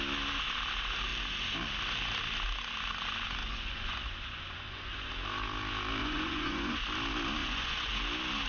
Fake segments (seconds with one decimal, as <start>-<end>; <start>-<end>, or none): 3.4-5.1; 6.0-6.8; 7.4-7.9